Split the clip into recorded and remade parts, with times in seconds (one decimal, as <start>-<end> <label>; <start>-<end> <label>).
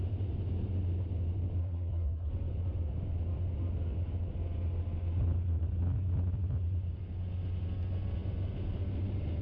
0.0-1.6 recorded; 1.6-2.3 remade; 2.3-9.4 recorded